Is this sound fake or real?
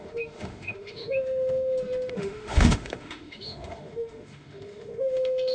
fake